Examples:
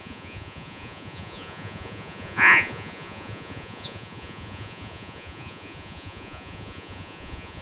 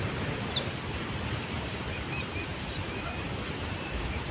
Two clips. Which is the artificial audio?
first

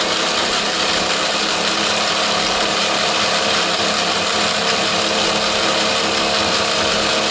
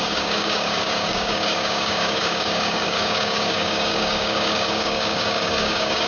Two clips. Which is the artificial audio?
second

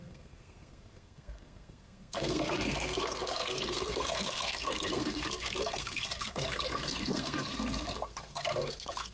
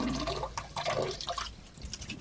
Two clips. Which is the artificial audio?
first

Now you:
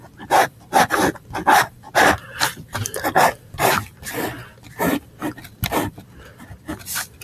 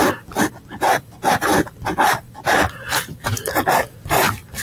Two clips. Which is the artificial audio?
first